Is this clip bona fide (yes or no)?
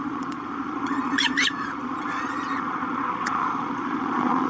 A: no